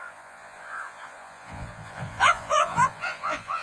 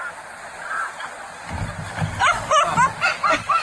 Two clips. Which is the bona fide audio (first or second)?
second